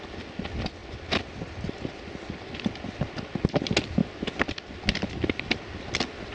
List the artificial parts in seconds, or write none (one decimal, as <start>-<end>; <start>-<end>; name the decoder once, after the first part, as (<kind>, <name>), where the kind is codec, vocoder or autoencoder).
none